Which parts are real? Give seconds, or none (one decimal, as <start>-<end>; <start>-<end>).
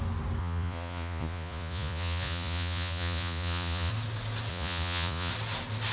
0.0-0.4; 3.9-4.5; 5.3-5.9